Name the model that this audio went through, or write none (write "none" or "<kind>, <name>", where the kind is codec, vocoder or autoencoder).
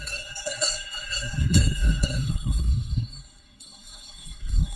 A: codec, SNAC